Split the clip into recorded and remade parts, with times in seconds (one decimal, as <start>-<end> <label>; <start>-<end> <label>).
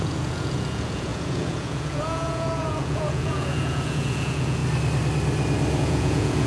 0.0-4.6 remade; 4.6-5.8 recorded; 5.8-6.5 remade